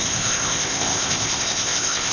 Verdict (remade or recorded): remade